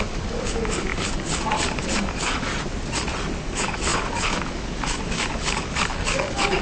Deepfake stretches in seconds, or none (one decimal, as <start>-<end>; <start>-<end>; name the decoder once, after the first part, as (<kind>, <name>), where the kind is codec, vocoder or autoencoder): 0.0-2.5 (codec, DAC); 3.4-6.6